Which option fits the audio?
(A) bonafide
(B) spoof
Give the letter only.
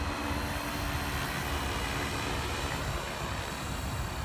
A